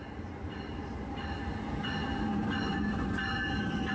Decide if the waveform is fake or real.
real